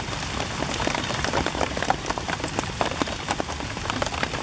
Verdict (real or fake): fake